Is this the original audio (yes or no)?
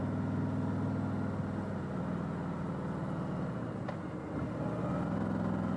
yes